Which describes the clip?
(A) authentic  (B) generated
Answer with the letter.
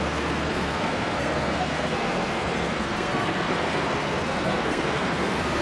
B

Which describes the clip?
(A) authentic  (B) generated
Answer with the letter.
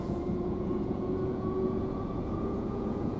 B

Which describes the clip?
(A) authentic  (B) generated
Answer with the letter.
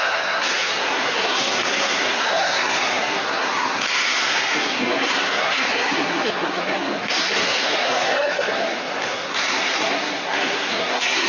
B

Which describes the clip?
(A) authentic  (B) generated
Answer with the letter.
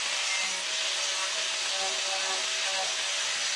A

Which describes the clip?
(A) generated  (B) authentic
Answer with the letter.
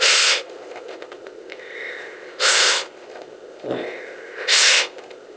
A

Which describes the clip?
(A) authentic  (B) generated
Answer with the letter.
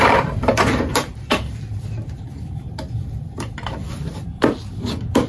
B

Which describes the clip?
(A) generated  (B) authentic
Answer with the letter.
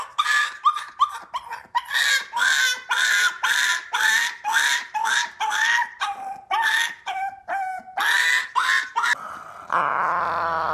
B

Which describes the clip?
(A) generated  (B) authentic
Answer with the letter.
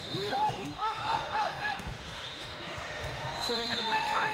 A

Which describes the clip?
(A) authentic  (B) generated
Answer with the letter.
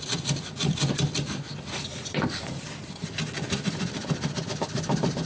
A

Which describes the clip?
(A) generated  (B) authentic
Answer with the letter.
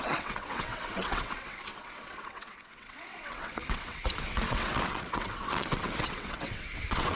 A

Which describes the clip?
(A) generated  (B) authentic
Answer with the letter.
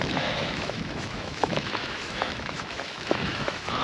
A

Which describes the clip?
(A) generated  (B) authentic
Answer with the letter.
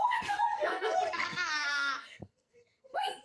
A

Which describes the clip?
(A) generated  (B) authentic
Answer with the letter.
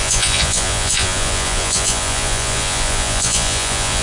A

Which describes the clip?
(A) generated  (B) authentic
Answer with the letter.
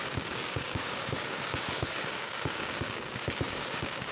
A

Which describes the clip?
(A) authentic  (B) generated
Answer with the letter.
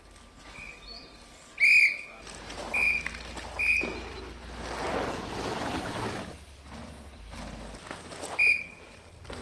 A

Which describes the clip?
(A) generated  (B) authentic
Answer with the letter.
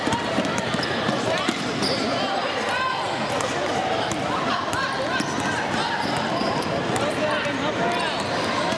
B